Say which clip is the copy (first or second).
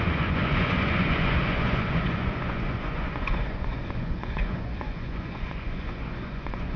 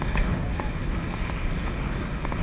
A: first